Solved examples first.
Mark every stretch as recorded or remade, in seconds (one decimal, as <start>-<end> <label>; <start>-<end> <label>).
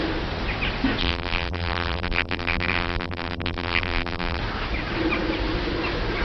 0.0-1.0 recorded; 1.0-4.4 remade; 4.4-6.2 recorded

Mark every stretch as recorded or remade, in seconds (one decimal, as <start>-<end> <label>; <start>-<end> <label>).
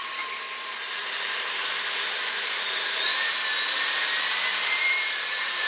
0.0-3.3 remade; 3.3-4.5 recorded; 4.5-5.7 remade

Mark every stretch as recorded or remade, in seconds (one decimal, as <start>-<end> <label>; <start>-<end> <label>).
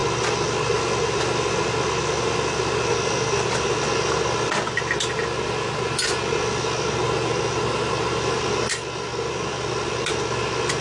0.0-10.8 recorded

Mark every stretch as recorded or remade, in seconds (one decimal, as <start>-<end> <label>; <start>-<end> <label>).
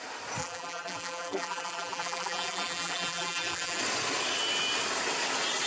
0.0-0.4 recorded; 0.4-3.8 remade; 3.8-5.7 recorded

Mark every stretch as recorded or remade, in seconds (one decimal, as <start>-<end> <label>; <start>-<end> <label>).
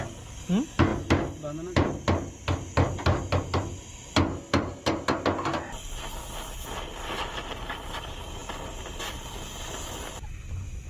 0.0-10.9 recorded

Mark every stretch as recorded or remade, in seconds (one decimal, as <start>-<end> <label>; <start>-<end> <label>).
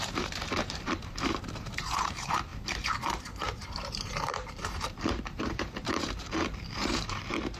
0.0-7.6 remade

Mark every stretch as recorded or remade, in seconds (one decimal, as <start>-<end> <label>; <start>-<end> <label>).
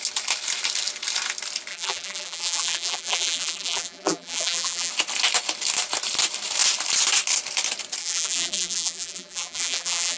0.0-1.7 recorded; 1.7-4.9 remade; 4.9-8.0 recorded; 8.0-10.2 remade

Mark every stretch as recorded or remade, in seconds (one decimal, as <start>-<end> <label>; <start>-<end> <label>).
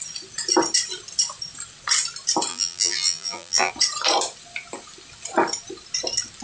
0.0-2.5 recorded; 2.5-3.7 remade; 3.7-6.4 recorded